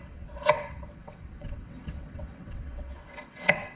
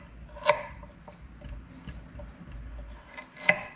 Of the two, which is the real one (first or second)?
second